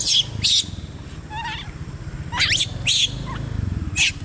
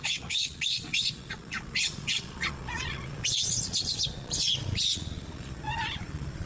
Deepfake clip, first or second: second